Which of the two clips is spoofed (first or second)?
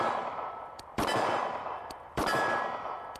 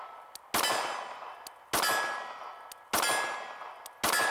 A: first